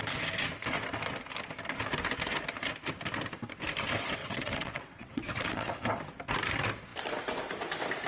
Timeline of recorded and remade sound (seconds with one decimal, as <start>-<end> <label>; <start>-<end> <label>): 0.0-4.2 recorded; 4.2-5.7 remade; 5.7-8.1 recorded